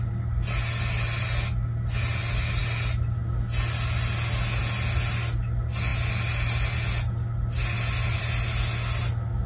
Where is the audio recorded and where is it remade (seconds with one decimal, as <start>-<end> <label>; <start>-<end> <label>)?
0.0-9.5 recorded